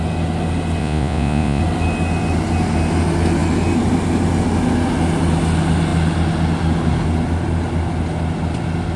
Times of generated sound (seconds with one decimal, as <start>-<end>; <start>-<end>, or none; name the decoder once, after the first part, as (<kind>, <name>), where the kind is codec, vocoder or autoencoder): 0.8-1.6 (vocoder, Vocos)